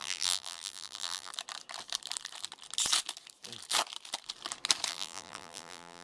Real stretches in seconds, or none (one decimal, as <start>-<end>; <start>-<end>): 1.3-4.9

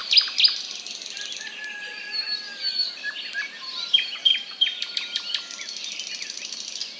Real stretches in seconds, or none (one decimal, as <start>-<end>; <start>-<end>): 0.0-7.0

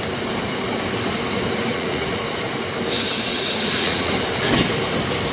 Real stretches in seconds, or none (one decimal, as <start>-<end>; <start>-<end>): 0.0-1.7; 2.2-3.3; 4.1-5.3